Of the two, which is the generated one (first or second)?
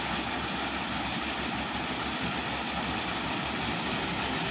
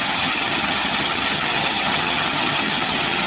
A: second